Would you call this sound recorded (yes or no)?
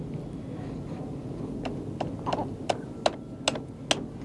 yes